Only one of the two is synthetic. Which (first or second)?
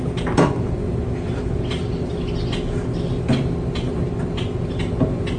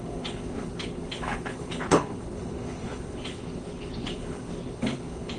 second